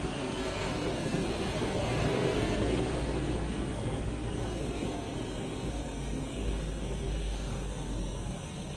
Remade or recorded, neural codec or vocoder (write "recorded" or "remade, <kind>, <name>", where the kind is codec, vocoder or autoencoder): remade, codec, SNAC